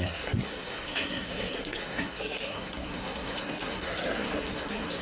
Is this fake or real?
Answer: fake